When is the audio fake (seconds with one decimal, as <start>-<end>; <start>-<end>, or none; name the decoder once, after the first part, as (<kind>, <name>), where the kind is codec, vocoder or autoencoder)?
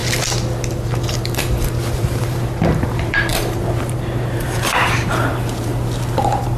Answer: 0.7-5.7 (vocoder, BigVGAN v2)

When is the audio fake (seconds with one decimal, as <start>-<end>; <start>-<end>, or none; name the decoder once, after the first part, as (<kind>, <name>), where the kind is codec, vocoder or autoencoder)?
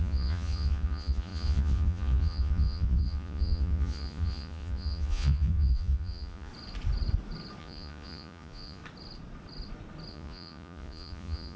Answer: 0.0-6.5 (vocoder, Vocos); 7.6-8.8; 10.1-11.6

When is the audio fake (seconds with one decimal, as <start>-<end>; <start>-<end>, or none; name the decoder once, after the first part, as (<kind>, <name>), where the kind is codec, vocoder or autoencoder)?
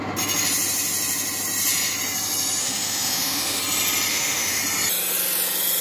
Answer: 2.6-3.6 (autoencoder, DAC-VAE); 4.1-4.6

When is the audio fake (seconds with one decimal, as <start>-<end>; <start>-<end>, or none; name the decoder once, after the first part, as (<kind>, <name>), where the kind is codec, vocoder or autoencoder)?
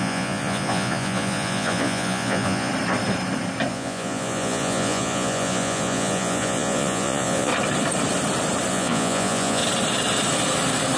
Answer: 0.0-2.7 (vocoder, Vocos); 3.7-7.5; 8.7-9.6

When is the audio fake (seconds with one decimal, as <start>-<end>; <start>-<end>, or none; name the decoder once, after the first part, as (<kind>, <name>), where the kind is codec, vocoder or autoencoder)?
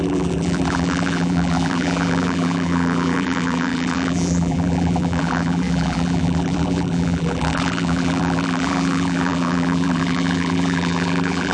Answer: 0.0-11.5 (vocoder, BigVGAN v2)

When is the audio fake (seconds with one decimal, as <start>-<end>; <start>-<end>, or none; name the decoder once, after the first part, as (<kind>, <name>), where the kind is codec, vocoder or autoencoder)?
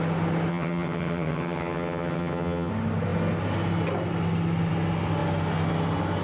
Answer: 0.5-2.7 (vocoder, HiFi-GAN)